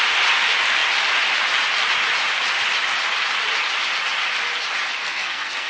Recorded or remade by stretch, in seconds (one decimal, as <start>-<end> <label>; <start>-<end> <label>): 0.0-5.0 recorded; 5.0-5.7 remade